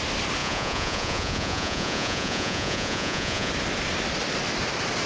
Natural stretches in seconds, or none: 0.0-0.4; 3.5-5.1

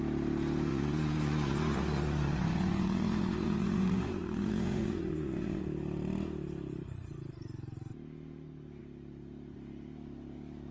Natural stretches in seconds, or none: 0.0-0.7; 5.6-10.7

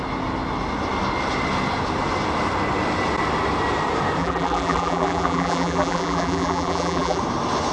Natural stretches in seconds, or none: 0.0-4.2; 7.2-7.7

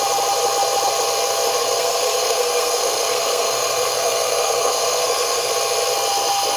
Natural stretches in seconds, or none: 0.0-1.6; 5.5-6.6

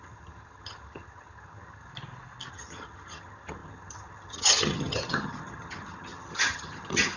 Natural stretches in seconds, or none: 1.9-2.5